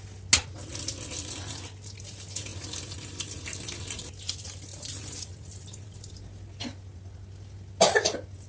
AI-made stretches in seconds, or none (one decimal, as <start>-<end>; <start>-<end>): 4.7-6.1